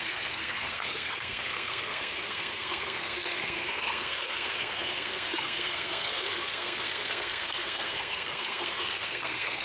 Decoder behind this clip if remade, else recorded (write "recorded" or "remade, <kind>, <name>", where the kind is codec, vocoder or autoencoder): remade, codec, SNAC